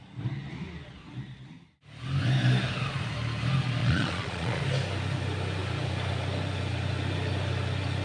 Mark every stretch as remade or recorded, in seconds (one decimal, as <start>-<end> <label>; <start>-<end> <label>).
0.0-3.8 recorded; 3.8-4.6 remade; 4.6-8.0 recorded